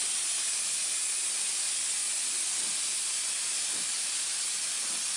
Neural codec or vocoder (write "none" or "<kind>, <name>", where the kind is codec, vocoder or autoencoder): none